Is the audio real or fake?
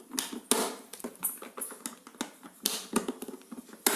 real